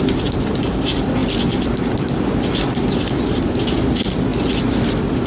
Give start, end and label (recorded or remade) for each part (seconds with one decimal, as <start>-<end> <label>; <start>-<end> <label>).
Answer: 0.0-5.3 recorded